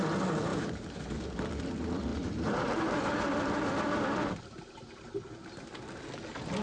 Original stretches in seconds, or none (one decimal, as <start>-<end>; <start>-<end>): 0.0-0.5; 1.2-2.1; 4.4-6.6